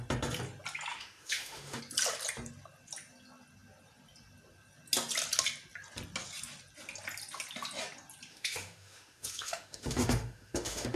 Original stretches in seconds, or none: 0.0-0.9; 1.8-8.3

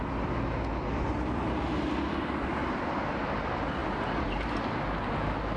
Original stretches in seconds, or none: 0.0-5.6

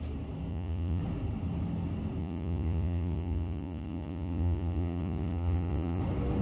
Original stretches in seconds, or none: 0.0-0.5; 1.0-2.2; 6.0-6.4